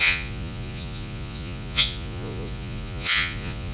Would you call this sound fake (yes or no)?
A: yes